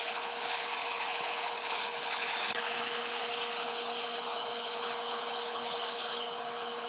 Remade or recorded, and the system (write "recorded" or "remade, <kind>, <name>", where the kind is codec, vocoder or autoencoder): remade, codec, HILCodec